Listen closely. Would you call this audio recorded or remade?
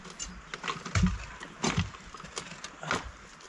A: recorded